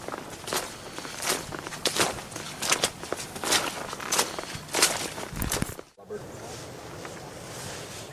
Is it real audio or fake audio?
real